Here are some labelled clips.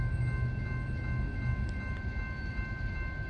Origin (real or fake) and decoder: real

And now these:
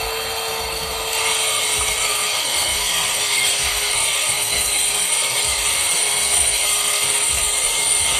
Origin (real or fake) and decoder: fake, codec, SNAC